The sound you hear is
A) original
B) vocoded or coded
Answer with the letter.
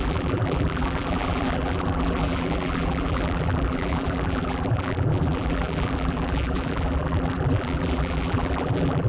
B